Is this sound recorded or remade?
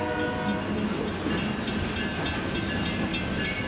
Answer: recorded